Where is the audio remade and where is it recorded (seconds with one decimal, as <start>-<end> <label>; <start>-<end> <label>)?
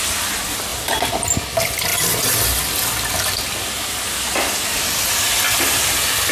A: 0.0-6.3 recorded